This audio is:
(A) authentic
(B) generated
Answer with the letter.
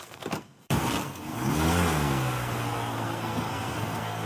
B